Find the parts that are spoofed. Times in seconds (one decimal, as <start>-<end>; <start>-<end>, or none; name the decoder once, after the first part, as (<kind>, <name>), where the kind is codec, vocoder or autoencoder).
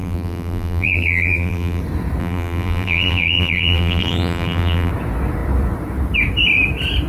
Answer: 0.0-1.8 (vocoder, BigVGAN v2); 2.2-4.9